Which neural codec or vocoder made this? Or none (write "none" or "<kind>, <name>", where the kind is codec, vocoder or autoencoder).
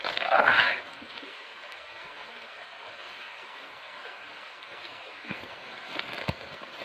codec, SNAC